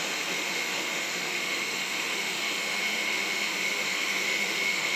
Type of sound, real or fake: fake